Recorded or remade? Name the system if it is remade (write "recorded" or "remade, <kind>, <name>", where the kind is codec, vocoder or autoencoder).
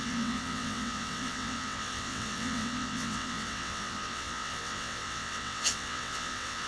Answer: remade, vocoder, WaveNeXt